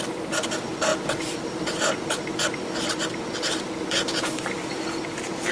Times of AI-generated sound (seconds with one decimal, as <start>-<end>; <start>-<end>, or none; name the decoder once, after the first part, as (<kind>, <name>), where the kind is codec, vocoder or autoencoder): none

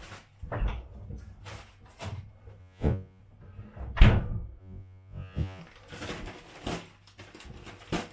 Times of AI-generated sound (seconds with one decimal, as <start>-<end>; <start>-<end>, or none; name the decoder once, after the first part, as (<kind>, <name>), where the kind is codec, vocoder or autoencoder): 2.6-3.2 (vocoder, Vocos); 4.6-5.6

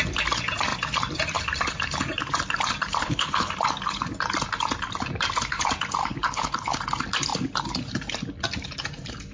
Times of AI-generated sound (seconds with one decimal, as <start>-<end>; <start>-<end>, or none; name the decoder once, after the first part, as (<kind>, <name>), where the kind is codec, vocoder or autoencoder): 3.0-3.5 (codec, HILCodec); 6.0-6.8